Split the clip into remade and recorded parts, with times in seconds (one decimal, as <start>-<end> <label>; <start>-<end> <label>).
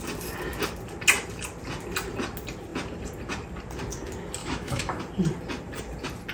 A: 0.0-4.4 recorded; 4.4-5.0 remade; 5.0-6.3 recorded